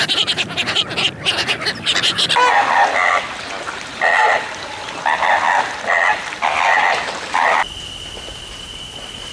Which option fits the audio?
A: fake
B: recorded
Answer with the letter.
B